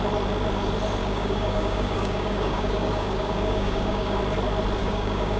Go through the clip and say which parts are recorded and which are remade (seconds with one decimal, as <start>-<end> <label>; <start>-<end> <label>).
0.0-1.0 recorded; 1.0-4.2 remade; 4.2-4.8 recorded; 4.8-5.4 remade